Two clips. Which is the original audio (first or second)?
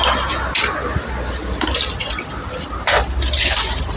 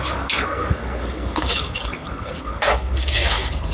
first